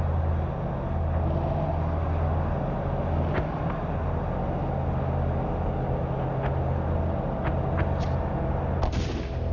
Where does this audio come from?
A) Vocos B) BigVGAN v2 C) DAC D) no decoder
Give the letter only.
D